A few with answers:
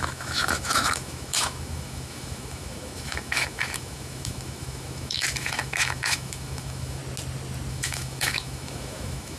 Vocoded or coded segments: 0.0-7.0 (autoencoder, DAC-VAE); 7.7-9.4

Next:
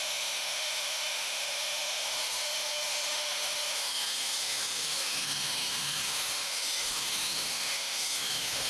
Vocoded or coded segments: 0.0-8.7 (autoencoder, DAC-VAE)

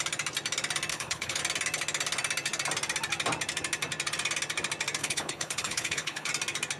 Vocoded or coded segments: 0.9-1.4 (codec, HILCodec); 5.0-6.3

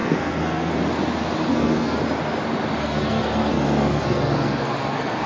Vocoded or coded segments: 0.0-0.7 (codec, SNAC); 1.5-2.0; 2.8-5.3

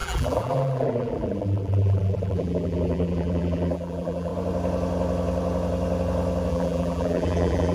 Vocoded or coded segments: 0.0-4.3 (vocoder, BigVGAN v2); 6.5-7.7

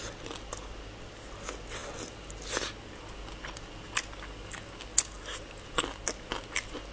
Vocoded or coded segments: none

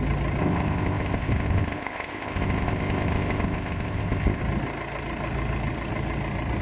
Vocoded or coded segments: 0.4-4.4 (codec, ZipCodec)